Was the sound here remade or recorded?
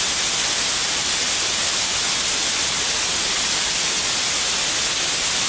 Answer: recorded